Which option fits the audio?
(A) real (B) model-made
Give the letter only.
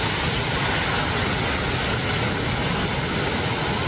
A